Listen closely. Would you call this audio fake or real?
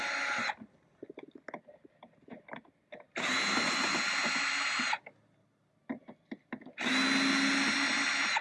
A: real